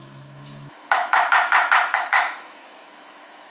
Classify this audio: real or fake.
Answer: fake